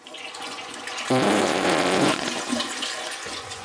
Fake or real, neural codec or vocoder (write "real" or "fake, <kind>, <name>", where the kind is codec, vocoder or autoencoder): fake, vocoder, Vocos